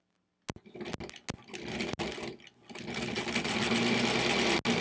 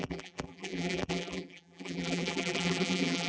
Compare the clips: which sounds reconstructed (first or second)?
second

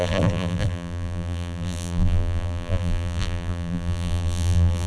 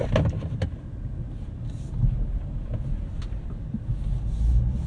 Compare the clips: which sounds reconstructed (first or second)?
first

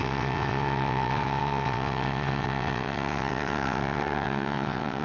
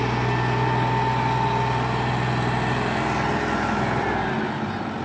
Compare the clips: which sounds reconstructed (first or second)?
first